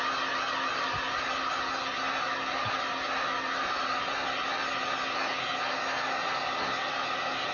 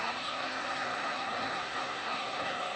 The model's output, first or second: second